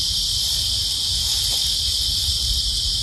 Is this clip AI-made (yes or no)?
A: no